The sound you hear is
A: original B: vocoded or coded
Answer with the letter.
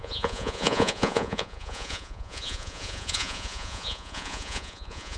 B